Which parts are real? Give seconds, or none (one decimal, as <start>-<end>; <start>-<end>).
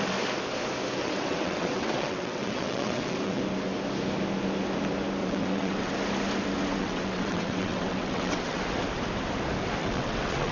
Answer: 0.0-1.0; 3.4-5.2; 5.9-6.7; 8.6-9.8